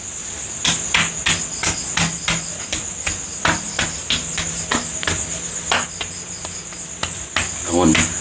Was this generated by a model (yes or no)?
no